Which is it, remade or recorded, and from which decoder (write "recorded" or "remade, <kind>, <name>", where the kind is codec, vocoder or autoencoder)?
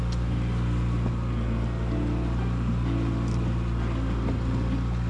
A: remade, vocoder, BigVGAN v2